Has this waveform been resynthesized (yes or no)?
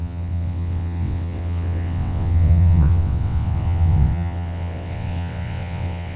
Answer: yes